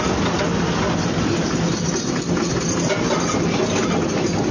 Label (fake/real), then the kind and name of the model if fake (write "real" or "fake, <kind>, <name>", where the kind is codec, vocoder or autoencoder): real